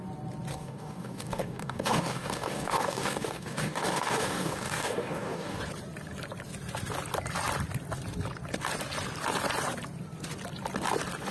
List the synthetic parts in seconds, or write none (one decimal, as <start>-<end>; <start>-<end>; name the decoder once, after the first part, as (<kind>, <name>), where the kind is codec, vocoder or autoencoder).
0.5-5.6 (codec, DAC)

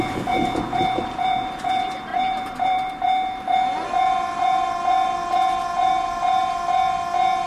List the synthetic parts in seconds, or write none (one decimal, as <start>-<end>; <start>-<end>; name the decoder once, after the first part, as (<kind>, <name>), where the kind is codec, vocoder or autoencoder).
2.1-2.9 (vocoder, BigVGAN v2)